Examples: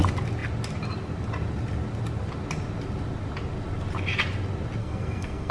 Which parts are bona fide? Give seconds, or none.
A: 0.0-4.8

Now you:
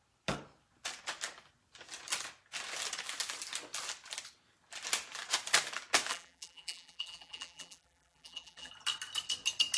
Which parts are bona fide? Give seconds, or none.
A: 0.0-6.1; 8.7-9.8

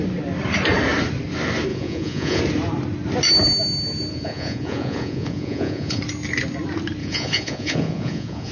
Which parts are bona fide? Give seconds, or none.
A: 0.0-1.7; 2.4-4.1; 6.0-7.0

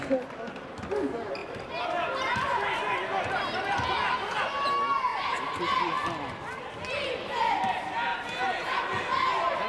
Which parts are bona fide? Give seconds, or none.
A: 0.0-1.4; 2.8-5.1; 5.6-8.1; 8.8-9.7

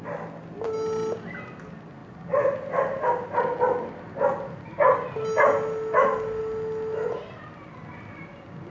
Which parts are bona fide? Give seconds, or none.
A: 0.0-8.7

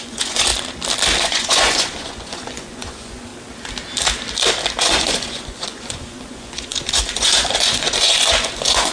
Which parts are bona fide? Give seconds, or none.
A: 0.5-1.2; 3.3-4.8